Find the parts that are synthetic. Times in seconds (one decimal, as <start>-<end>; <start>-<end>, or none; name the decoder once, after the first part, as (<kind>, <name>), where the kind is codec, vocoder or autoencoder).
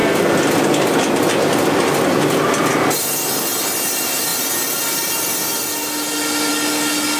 none